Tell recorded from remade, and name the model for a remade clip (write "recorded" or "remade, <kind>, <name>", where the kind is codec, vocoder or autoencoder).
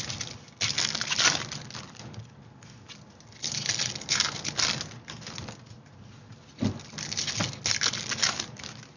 recorded